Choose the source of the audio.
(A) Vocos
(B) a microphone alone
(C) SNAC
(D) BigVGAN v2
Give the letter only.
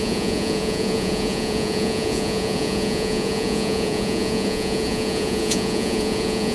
A